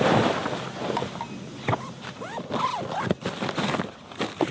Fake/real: real